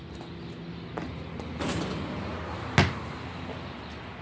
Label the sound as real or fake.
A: real